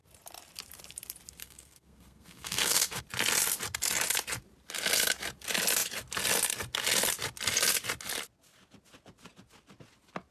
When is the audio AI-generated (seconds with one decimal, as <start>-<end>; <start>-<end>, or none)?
1.4-3.0